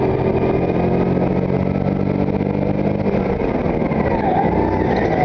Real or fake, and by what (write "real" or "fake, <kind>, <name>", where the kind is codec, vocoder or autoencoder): real